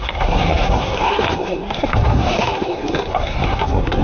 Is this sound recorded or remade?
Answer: remade